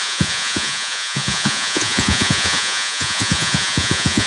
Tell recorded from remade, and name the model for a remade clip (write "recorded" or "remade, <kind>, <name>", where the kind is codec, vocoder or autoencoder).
remade, vocoder, Vocos